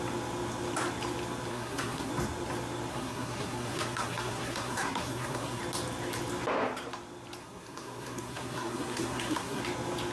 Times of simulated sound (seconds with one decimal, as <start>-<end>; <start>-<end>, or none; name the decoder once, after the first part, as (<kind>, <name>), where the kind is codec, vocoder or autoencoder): 1.5-2.1 (codec, SNAC); 2.9-5.6; 7.4-9.6